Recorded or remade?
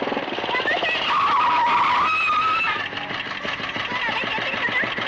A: recorded